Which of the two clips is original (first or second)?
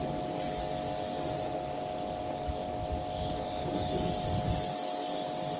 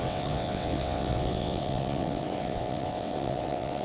first